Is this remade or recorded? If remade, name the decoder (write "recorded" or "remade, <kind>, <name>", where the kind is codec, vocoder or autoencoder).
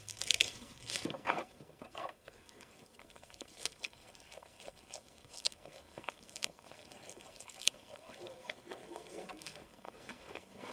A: remade, codec, SNAC